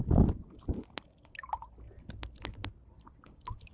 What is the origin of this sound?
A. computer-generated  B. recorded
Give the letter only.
B